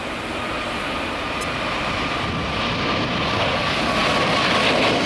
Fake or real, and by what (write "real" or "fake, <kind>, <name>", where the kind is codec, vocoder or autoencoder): real